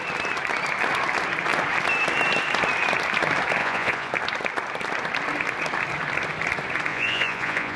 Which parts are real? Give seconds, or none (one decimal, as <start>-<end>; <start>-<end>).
0.0-3.6; 4.1-6.9